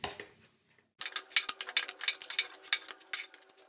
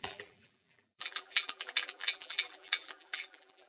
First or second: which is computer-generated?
second